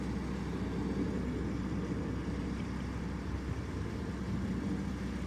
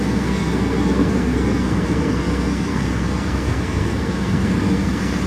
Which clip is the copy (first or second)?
second